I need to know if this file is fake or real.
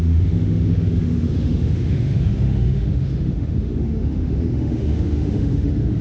fake